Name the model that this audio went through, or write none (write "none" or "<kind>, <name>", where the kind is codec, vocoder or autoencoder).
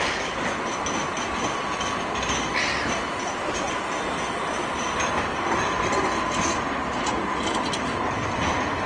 none